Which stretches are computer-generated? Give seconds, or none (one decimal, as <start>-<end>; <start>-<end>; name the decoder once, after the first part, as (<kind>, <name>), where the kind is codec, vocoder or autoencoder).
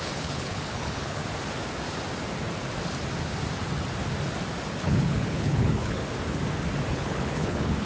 0.0-1.2 (codec, HILCodec); 4.8-6.0; 6.9-7.8